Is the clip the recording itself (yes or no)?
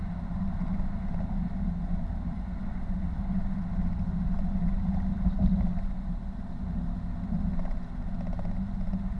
yes